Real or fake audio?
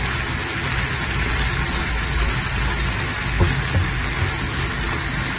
real